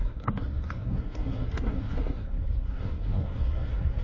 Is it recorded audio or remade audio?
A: remade